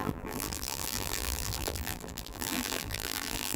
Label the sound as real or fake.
fake